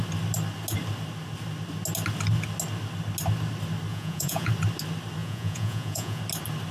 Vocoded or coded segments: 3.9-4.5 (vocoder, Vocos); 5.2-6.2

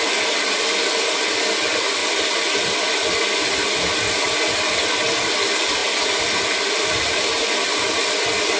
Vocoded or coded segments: none

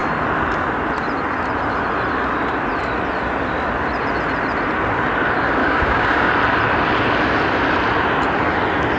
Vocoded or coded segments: 5.6-6.3 (codec, DAC)

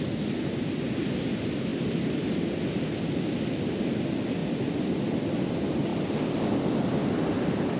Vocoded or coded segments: none

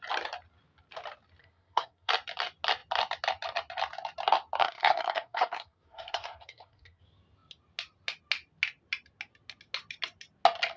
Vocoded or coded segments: 1.4-2.1 (codec, SNAC); 4.6-7.0